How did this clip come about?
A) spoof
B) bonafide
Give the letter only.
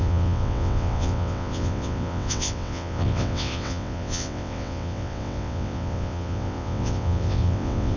A